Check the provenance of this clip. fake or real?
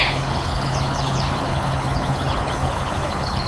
fake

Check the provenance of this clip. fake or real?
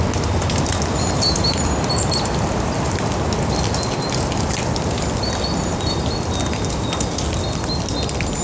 real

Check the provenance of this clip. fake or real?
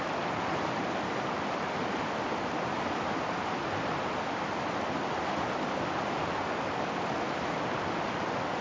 real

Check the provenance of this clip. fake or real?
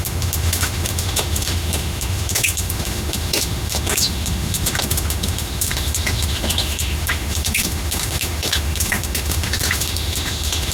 fake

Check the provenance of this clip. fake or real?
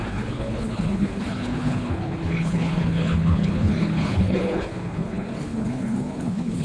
fake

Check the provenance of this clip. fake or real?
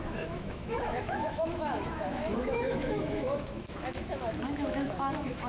fake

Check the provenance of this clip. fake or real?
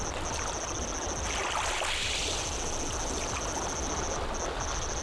real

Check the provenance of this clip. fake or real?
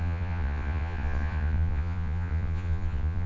fake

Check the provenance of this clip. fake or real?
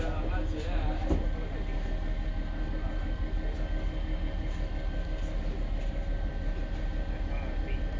real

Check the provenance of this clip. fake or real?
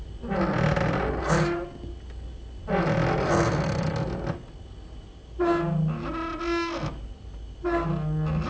real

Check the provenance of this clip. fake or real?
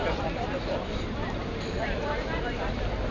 fake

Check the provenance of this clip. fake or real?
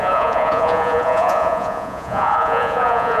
fake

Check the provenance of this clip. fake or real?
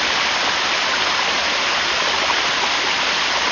real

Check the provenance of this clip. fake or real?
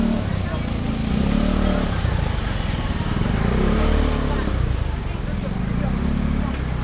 real